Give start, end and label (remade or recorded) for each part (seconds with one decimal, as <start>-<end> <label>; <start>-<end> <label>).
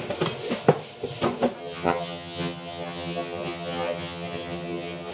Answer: 0.0-1.6 recorded; 1.6-5.1 remade